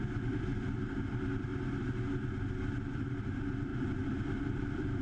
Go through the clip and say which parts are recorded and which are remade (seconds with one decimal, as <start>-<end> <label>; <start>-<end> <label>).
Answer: 0.0-1.5 remade; 1.5-2.6 recorded; 2.6-3.7 remade; 3.7-4.4 recorded; 4.4-5.0 remade

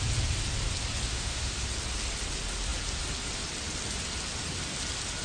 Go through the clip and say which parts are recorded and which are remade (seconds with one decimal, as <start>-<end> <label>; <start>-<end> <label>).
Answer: 0.0-1.1 recorded; 1.1-1.7 remade; 1.7-5.2 recorded

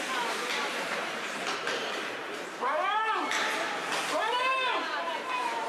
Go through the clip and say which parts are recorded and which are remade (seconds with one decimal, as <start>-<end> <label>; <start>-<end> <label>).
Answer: 0.0-0.7 recorded; 0.7-1.4 remade; 1.4-2.2 recorded; 2.2-3.0 remade; 3.0-4.5 recorded; 4.5-5.7 remade

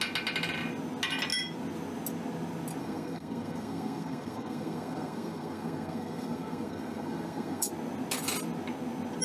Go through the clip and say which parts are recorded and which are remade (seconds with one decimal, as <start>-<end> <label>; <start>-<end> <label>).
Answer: 0.0-2.8 recorded; 2.8-7.7 remade; 7.7-9.2 recorded

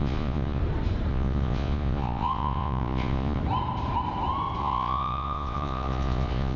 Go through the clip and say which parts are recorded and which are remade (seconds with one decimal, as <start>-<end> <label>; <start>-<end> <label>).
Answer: 0.0-0.6 remade; 0.6-1.1 recorded; 1.1-3.4 remade; 3.4-4.6 recorded; 4.6-6.6 remade

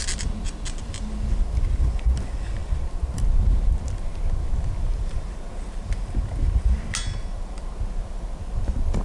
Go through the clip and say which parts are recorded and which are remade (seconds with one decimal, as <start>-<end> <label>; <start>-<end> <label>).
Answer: 0.0-9.0 recorded

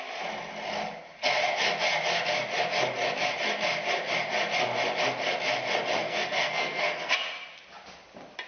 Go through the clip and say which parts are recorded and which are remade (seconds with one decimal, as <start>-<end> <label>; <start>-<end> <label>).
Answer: 0.0-6.0 recorded; 6.0-7.1 remade; 7.1-8.5 recorded

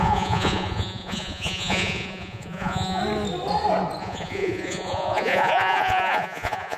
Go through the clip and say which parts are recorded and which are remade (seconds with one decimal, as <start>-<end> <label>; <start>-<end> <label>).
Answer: 0.0-3.0 remade; 3.0-4.0 recorded; 4.0-6.8 remade